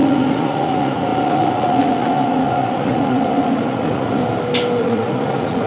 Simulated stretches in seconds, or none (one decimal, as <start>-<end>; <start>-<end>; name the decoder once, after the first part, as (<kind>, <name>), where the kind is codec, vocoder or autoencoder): 0.0-4.2 (vocoder, Vocos); 4.8-5.7